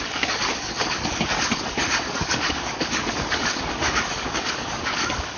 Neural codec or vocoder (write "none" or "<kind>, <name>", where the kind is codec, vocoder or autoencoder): codec, DAC